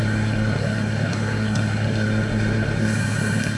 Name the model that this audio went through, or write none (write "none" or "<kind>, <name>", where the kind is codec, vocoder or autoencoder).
codec, SNAC